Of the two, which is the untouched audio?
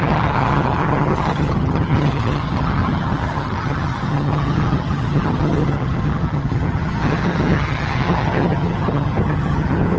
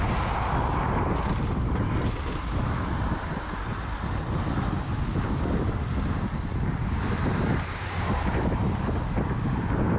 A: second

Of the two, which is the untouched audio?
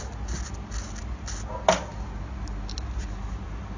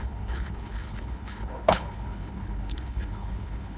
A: first